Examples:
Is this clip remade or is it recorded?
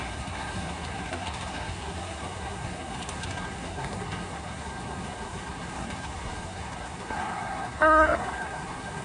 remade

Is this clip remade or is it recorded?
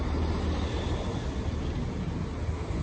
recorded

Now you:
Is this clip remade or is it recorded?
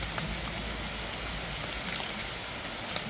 recorded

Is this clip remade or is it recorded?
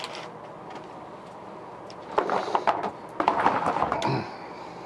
recorded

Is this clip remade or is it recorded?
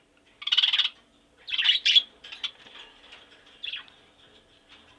recorded